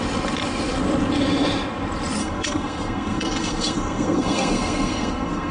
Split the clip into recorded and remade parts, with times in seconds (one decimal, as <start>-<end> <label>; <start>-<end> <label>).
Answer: 0.0-2.2 recorded; 2.2-5.5 remade